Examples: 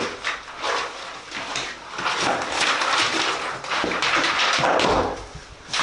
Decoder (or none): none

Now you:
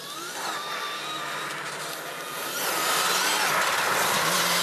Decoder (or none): none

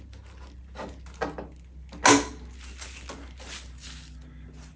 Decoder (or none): none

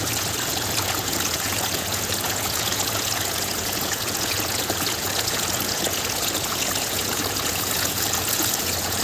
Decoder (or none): vocoder, Vocos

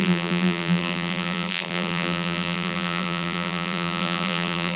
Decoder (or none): vocoder, BigVGAN v2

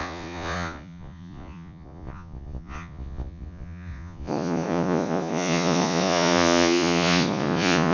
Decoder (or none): vocoder, Vocos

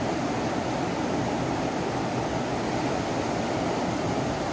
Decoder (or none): none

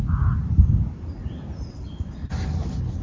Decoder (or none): none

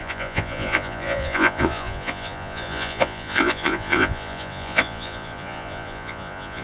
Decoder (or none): vocoder, Vocos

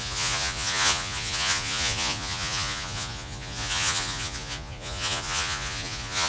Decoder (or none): vocoder, Vocos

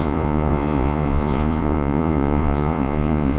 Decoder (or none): vocoder, Vocos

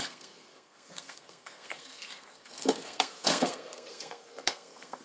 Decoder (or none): codec, SNAC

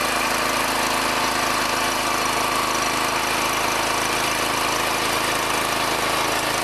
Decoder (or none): none